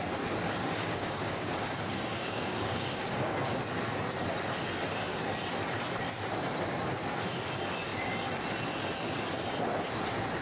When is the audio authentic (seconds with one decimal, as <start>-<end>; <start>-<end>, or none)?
0.0-0.6; 3.6-10.4